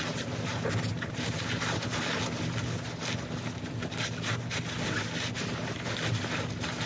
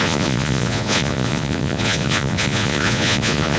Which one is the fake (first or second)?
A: second